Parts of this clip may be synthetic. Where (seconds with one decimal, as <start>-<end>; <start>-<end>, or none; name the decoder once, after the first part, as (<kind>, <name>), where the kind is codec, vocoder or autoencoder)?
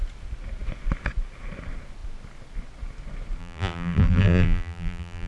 3.4-5.3 (vocoder, BigVGAN v2)